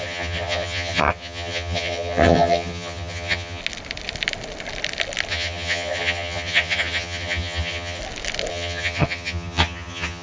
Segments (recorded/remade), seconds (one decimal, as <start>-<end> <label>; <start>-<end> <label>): 0.0-3.6 remade; 3.6-5.3 recorded; 5.3-8.0 remade; 8.0-8.5 recorded; 8.5-10.2 remade